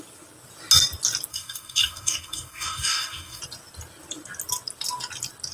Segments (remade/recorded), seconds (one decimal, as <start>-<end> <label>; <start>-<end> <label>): 0.0-1.3 recorded; 1.3-3.4 remade; 3.4-5.5 recorded